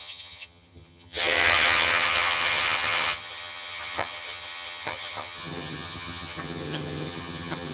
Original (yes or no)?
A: no